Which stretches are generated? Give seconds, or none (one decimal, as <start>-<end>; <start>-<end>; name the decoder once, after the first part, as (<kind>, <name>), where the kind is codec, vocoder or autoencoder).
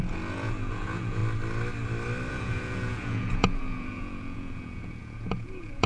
0.0-1.2 (vocoder, Vocos); 2.3-5.9